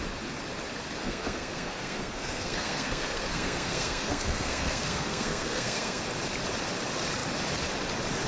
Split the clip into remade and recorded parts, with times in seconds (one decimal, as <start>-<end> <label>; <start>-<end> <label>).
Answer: 0.0-1.0 recorded; 1.0-6.0 remade; 6.0-8.3 recorded